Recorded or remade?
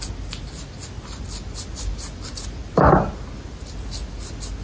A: recorded